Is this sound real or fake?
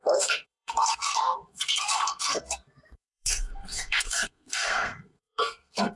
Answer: fake